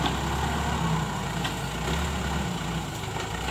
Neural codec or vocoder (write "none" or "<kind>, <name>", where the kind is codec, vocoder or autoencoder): none